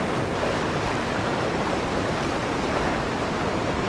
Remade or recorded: remade